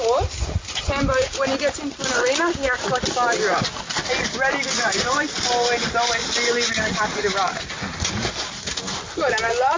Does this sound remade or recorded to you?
recorded